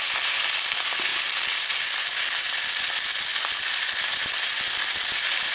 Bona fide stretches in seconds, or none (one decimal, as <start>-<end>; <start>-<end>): 0.0-5.5